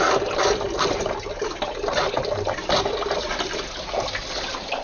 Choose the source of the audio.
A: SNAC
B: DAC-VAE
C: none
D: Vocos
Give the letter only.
C